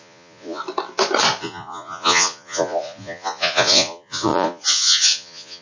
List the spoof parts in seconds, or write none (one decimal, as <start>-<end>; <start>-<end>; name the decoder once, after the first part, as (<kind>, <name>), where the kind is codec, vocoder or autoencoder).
0.0-0.6 (vocoder, Vocos); 1.4-5.6

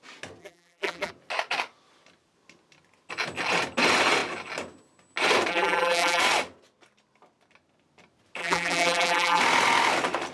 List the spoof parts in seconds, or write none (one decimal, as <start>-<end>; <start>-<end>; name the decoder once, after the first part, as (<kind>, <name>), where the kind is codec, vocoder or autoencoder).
0.4-1.1 (vocoder, BigVGAN v2); 5.5-6.2; 8.4-9.4

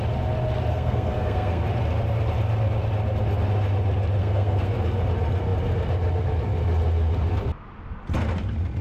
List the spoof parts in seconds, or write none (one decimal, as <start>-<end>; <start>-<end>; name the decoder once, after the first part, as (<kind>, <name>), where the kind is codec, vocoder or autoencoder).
0.7-1.6 (codec, SNAC); 4.2-4.7

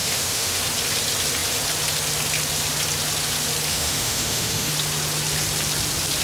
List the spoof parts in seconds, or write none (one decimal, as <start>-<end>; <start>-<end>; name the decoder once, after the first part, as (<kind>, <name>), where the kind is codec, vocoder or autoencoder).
0.0-0.6 (autoencoder, DAC-VAE); 3.7-4.7

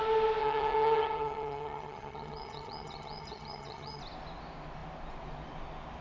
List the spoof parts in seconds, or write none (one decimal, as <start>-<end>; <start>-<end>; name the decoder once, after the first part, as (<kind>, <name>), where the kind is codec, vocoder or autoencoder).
0.4-4.0 (vocoder, HiFi-GAN)